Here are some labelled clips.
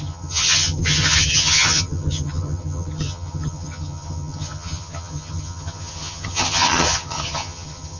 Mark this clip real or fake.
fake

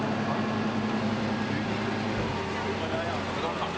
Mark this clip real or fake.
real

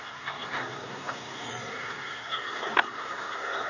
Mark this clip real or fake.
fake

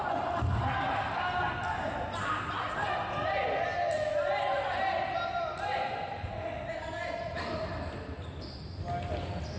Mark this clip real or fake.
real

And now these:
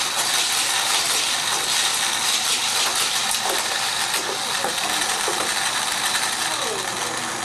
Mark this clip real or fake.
real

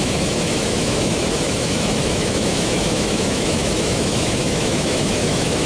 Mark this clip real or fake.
fake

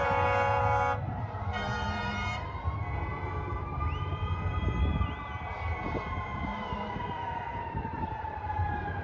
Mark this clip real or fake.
fake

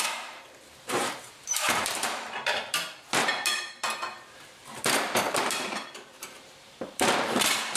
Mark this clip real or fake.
fake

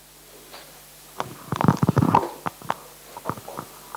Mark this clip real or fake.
real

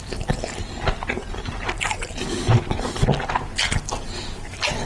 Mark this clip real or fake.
real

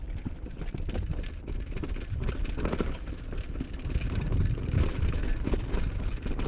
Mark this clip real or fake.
real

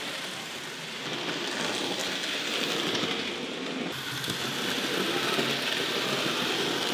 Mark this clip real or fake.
real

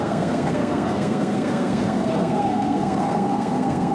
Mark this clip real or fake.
fake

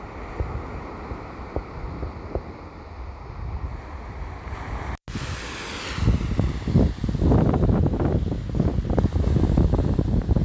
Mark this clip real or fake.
real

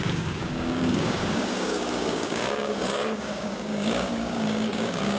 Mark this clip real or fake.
fake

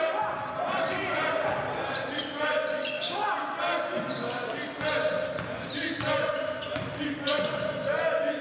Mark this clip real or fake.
real